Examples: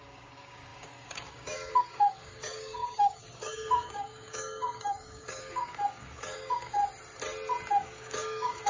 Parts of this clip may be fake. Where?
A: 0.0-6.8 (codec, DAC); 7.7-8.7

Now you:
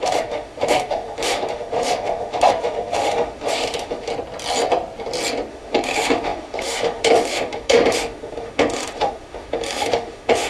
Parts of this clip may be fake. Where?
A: 0.0-4.1 (autoencoder, DAC-VAE); 5.5-10.5

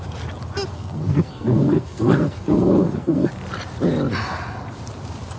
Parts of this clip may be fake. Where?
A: 0.7-3.3 (codec, SNAC)

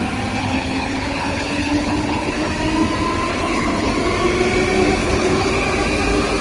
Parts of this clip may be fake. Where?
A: 0.4-2.5 (codec, HILCodec); 3.3-3.9; 5.0-5.5

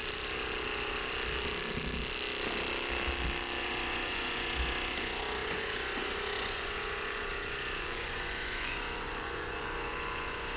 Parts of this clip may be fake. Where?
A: 3.6-10.6 (vocoder, Vocos)

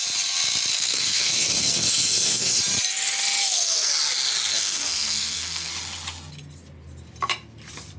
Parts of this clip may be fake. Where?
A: 0.7-2.6 (codec, SNAC); 3.4-3.9; 4.5-5.7

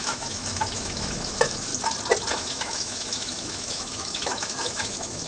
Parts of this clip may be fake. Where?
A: 0.0-1.7 (autoencoder, DAC-VAE); 2.3-5.3